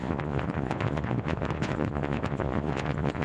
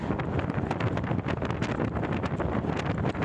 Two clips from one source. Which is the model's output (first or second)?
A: first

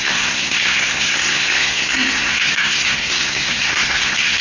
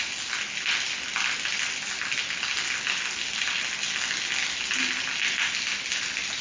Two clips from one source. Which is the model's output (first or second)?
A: first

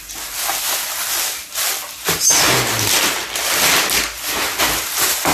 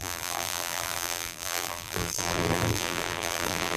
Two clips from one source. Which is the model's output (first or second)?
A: second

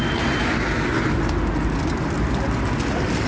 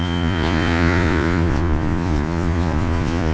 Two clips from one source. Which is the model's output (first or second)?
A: second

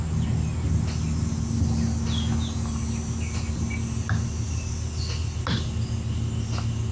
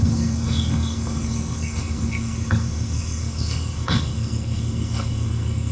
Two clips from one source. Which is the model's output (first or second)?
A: second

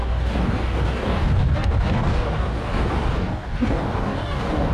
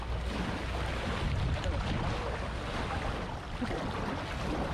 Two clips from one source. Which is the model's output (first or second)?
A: first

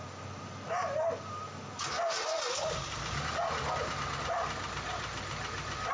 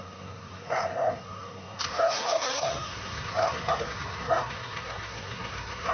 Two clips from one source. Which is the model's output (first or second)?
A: second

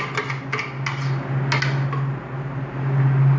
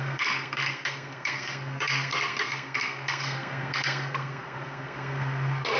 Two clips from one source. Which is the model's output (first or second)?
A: second